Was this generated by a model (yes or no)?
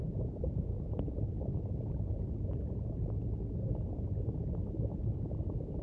no